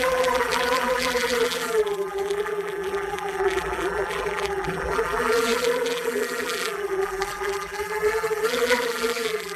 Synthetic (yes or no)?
yes